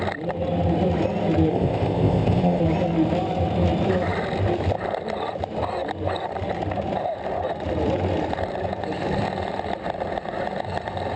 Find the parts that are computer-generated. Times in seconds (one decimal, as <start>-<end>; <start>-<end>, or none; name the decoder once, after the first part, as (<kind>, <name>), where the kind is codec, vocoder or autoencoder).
1.5-2.6 (codec, ZipCodec)